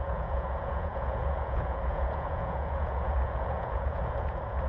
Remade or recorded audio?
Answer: remade